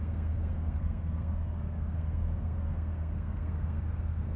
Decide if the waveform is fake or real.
fake